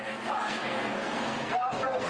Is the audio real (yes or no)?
no